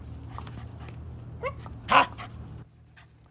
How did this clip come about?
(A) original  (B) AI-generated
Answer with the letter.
A